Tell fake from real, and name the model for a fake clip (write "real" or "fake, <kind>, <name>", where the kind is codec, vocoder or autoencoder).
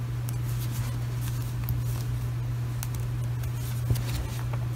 real